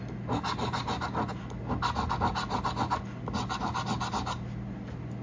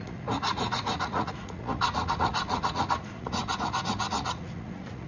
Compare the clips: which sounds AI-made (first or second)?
second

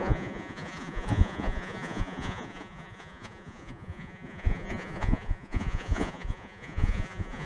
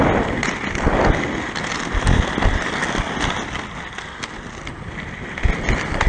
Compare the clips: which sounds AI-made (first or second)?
first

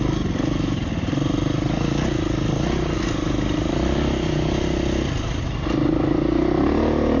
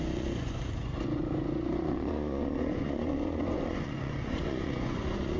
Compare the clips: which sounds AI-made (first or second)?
second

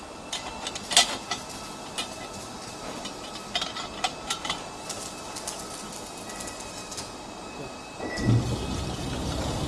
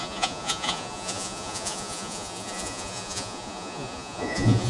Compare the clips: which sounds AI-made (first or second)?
second